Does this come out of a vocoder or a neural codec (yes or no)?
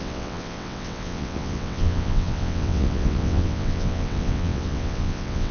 yes